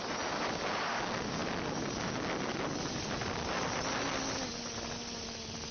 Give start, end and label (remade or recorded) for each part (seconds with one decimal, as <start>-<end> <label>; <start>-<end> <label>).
0.0-5.7 recorded